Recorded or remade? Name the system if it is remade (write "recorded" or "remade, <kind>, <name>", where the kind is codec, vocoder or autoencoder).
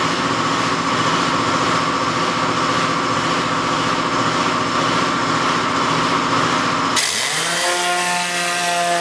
recorded